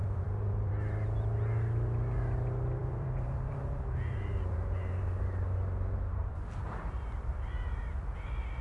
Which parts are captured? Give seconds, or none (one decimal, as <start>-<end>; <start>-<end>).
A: 0.7-2.8; 5.0-6.2; 7.8-8.6